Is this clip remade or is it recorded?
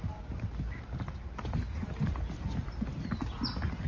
recorded